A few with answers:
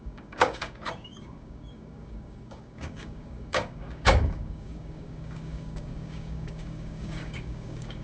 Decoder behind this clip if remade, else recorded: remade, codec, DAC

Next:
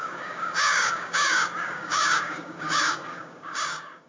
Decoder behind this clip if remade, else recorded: remade, codec, DAC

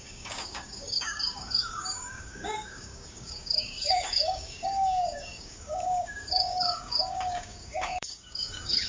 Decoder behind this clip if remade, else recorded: remade, codec, DAC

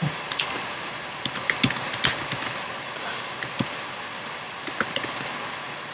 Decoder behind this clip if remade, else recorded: recorded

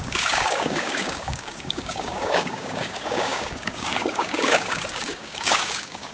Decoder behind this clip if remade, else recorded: remade, codec, DAC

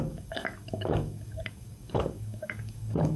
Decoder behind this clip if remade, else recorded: remade, codec, DAC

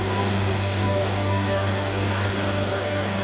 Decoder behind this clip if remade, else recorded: remade, codec, DAC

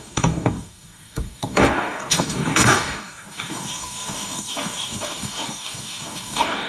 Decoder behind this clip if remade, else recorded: remade, codec, DAC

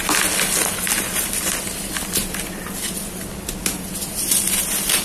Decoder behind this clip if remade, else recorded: recorded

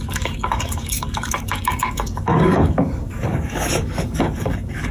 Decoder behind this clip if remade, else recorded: remade, codec, DAC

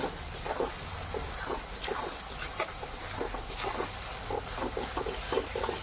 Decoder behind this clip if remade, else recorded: recorded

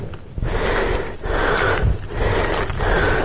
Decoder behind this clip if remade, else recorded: recorded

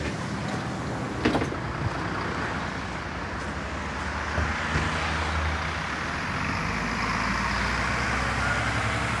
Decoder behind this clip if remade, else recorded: recorded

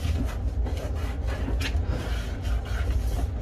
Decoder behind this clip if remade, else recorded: recorded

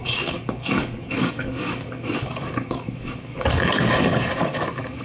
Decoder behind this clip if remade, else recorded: remade, codec, DAC